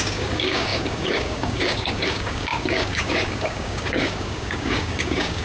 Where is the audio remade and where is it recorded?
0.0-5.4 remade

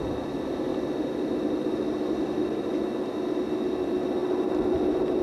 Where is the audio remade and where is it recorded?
0.0-5.2 recorded

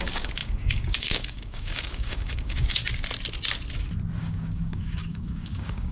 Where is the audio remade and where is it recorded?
0.0-2.8 remade; 2.8-4.2 recorded; 4.2-5.9 remade